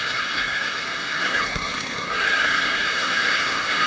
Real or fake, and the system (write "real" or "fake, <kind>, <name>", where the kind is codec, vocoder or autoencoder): fake, codec, SNAC